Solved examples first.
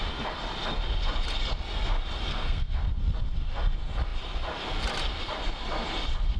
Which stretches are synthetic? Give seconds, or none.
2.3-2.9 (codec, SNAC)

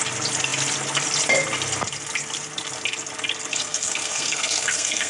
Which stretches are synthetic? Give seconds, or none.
3.5-5.1 (codec, SNAC)

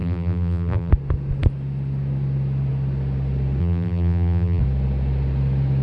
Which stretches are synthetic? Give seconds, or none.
0.0-0.9 (vocoder, BigVGAN v2); 3.6-4.6

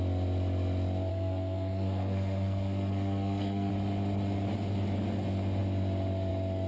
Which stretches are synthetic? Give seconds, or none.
1.1-3.7 (codec, SNAC)

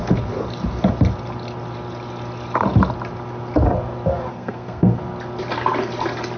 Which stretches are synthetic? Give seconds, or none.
4.3-5.0 (codec, SNAC)

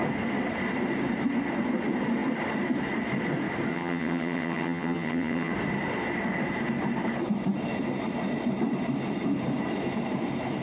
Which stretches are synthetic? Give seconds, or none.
3.7-5.5 (vocoder, HiFi-GAN)

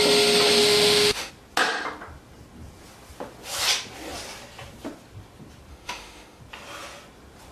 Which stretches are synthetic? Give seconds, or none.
0.6-1.3 (autoencoder, DAC-VAE); 5.7-6.4

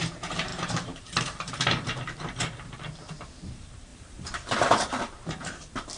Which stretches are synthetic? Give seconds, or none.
0.0-6.0 (vocoder, BigVGAN v2)